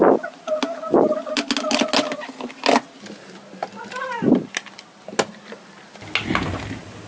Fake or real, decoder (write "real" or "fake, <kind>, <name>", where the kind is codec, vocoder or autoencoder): real